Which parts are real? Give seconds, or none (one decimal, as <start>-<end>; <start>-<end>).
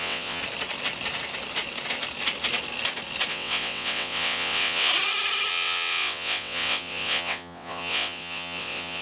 0.4-3.3; 4.9-5.5